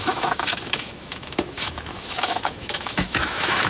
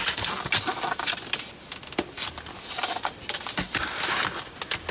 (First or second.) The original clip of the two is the second